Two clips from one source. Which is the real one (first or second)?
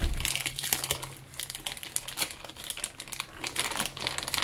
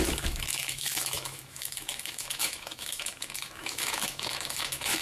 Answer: first